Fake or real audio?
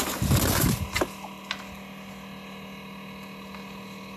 real